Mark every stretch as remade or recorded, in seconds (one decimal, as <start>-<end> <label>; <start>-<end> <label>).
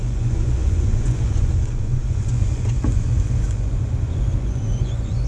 0.0-5.3 remade